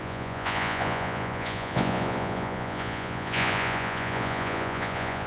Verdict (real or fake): fake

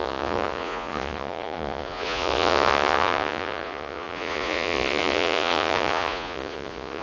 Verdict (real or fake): fake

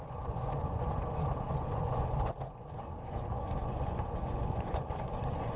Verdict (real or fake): fake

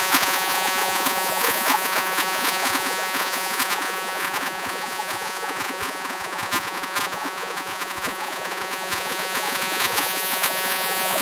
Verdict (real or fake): fake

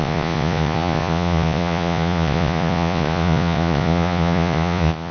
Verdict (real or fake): fake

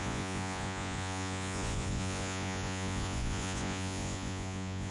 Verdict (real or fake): fake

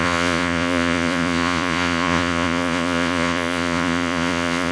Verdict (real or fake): fake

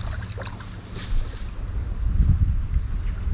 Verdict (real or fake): real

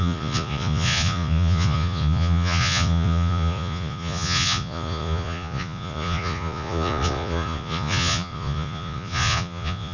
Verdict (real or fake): fake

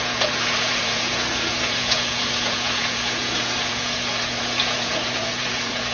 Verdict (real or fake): fake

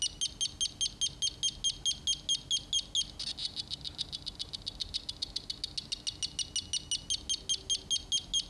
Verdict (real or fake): real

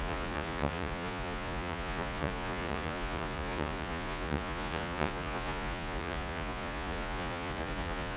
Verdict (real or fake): fake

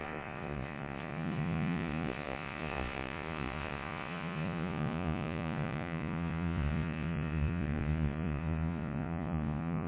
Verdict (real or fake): fake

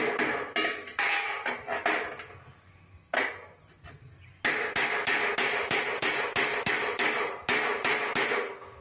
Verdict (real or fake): real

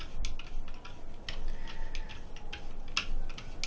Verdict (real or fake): real